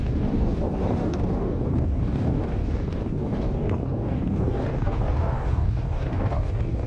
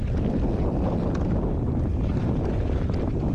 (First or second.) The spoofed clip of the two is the first